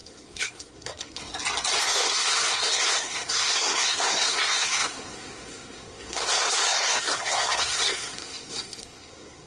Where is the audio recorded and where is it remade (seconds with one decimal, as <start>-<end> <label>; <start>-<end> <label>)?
0.0-1.3 remade; 1.3-1.8 recorded; 1.8-9.5 remade